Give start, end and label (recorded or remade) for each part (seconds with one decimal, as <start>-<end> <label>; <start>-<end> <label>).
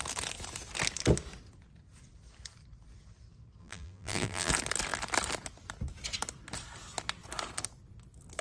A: 0.0-3.6 recorded; 3.6-4.5 remade; 4.5-8.4 recorded